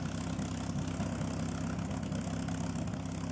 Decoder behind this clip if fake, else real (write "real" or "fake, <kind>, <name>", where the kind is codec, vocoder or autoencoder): real